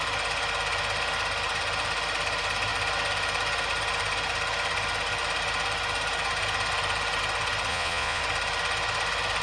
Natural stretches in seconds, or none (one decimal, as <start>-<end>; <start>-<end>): 0.0-7.7; 8.2-9.4